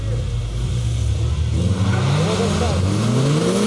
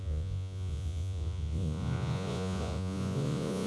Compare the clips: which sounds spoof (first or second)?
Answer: second